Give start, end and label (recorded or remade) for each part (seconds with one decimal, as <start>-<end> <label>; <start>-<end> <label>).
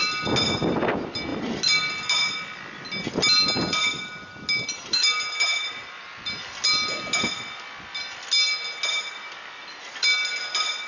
0.0-10.9 recorded